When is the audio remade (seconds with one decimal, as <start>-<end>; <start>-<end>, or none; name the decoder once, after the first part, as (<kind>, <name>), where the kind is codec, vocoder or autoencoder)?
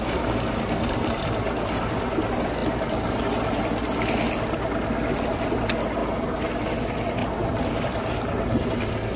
none